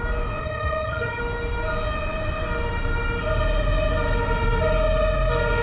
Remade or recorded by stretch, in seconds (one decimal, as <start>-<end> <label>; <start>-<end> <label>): 0.0-0.4 recorded; 0.4-1.2 remade; 1.2-5.6 recorded